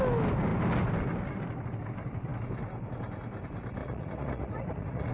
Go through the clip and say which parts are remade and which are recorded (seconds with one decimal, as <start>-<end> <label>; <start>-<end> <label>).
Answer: 0.0-3.8 recorded; 3.8-5.1 remade